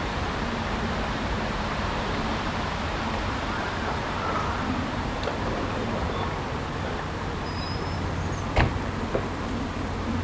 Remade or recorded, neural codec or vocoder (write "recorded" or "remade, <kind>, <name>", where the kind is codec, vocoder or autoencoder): remade, vocoder, BigVGAN v2